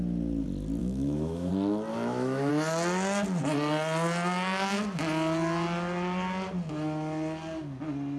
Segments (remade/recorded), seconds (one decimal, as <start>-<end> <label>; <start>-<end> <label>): 0.0-0.8 recorded; 0.8-1.5 remade; 1.5-1.9 recorded; 1.9-2.5 remade; 2.5-8.2 recorded